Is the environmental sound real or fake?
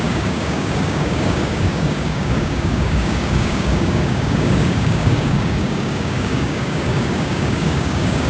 fake